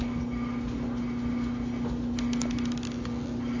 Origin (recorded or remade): recorded